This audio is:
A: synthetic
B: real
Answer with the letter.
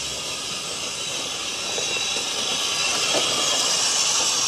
B